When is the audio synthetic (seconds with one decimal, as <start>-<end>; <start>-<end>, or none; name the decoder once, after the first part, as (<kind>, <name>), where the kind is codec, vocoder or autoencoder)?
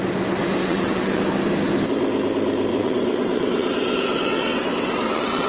0.6-1.2 (vocoder, WaveNeXt); 2.7-5.5